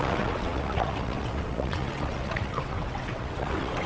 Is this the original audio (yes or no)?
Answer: no